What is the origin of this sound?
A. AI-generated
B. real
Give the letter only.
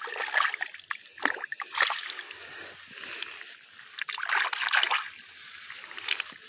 B